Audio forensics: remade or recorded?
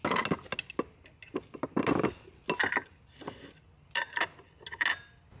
recorded